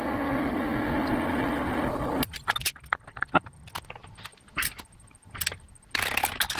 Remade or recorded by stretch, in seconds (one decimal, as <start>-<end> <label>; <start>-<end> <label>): 0.0-6.6 recorded

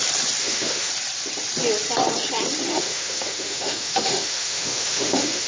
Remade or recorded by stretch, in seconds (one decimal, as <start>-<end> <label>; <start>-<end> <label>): 0.0-0.4 recorded; 0.4-0.9 remade; 0.9-2.7 recorded; 2.7-5.5 remade

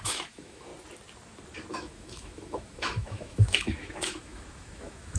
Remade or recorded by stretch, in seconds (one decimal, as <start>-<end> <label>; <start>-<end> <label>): 0.0-0.7 remade; 0.7-1.7 recorded; 1.7-5.2 remade

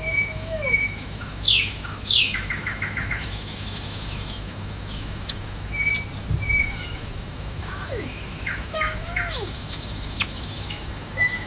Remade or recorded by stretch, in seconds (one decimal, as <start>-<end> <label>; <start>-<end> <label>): 0.0-5.9 remade; 5.9-6.6 recorded; 6.6-11.5 remade

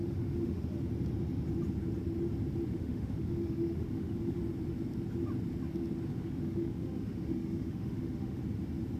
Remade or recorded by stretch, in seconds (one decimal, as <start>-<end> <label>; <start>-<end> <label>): 0.0-0.7 remade; 0.7-2.7 recorded; 2.7-4.4 remade; 4.4-6.1 recorded; 6.1-8.4 remade; 8.4-9.0 recorded